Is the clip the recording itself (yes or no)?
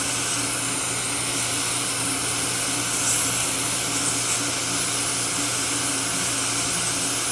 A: yes